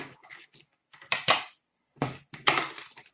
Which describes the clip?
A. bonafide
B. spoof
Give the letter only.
B